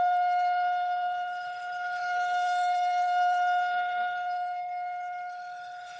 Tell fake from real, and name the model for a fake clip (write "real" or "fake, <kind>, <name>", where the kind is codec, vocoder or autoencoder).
fake, codec, HILCodec